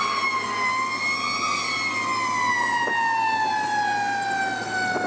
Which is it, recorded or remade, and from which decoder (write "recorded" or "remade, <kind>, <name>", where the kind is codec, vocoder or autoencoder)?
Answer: recorded